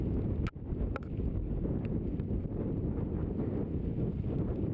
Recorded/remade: recorded